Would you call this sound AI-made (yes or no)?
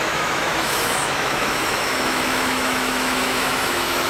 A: yes